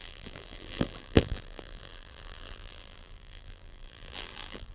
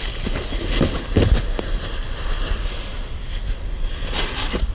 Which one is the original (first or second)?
second